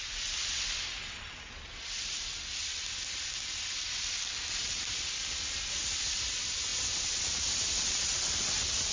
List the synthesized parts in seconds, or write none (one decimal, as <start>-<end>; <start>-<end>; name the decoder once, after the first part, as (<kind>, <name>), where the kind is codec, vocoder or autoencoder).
none